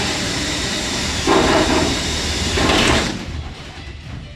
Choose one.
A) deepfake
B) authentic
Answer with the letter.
A